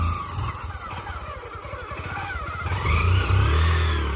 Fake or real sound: real